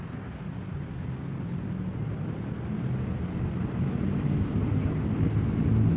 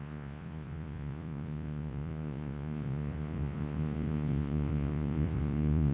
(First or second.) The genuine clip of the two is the first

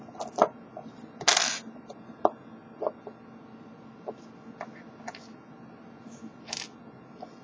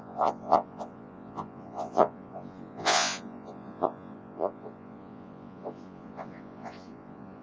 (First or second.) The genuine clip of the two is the first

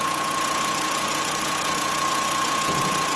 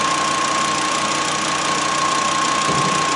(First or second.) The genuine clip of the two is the second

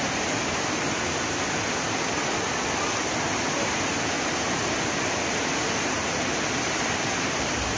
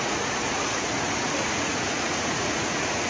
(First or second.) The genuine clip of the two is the first